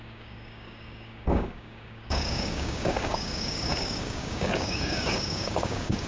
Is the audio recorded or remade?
remade